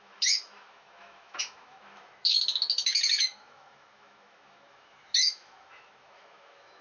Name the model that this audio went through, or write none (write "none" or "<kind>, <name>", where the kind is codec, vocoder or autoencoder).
autoencoder, DAC-VAE